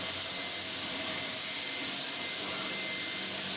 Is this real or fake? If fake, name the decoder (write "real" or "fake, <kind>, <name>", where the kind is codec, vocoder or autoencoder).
real